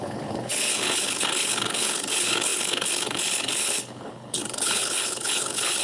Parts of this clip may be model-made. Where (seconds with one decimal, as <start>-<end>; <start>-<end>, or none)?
0.0-5.8